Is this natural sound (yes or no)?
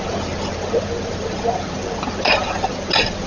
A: yes